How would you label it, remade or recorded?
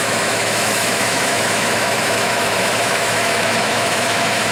remade